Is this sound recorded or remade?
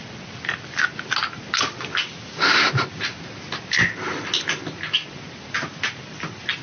recorded